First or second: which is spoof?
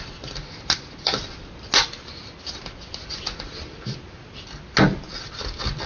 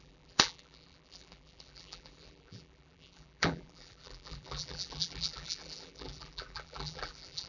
second